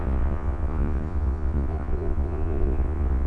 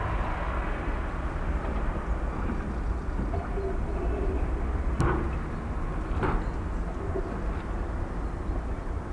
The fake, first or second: first